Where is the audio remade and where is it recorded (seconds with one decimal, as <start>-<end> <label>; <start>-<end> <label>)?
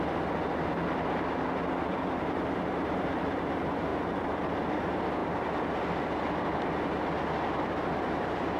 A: 0.0-1.9 recorded; 1.9-3.4 remade; 3.4-3.9 recorded; 3.9-4.7 remade; 4.7-8.6 recorded